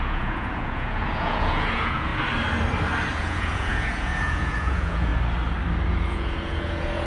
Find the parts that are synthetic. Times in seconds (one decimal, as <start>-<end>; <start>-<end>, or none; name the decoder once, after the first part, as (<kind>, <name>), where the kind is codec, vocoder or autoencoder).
0.0-2.1 (vocoder, Vocos); 3.1-5.1; 5.9-7.1